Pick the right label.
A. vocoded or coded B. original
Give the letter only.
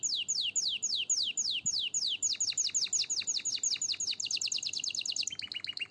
B